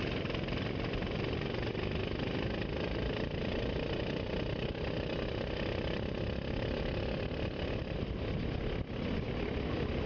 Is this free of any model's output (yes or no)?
yes